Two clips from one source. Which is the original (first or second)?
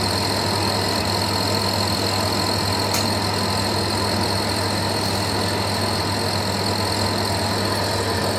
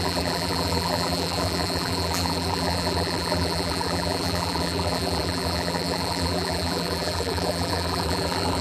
first